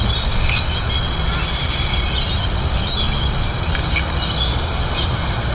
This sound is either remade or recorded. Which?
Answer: recorded